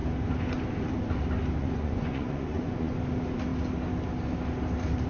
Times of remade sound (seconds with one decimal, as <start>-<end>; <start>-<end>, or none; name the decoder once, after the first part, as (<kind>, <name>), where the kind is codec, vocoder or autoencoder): 1.6-2.9 (vocoder, Vocos)